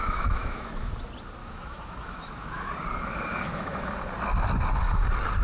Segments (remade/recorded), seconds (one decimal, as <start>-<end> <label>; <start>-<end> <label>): 0.0-0.9 remade; 0.9-1.4 recorded; 1.4-2.7 remade; 2.7-3.3 recorded; 3.3-3.9 remade; 3.9-5.4 recorded